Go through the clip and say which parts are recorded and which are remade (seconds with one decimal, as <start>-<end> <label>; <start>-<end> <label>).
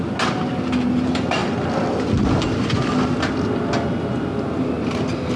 0.0-5.4 recorded